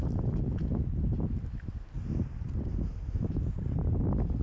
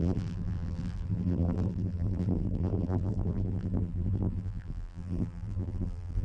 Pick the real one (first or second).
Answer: first